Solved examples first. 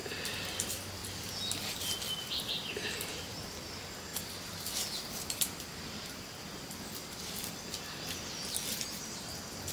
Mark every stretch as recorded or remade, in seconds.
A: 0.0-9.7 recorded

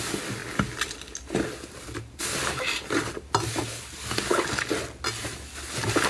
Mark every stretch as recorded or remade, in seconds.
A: 0.0-6.1 recorded

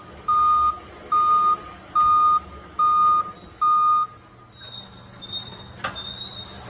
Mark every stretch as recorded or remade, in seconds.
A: 0.0-6.7 recorded

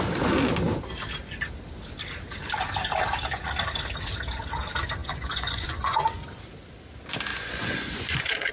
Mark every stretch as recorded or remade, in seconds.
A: 0.0-5.0 recorded; 5.0-6.2 remade; 6.2-7.3 recorded; 7.3-8.5 remade

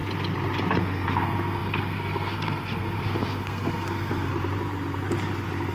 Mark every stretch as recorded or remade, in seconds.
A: 0.0-0.8 recorded; 0.8-4.3 remade; 4.3-5.7 recorded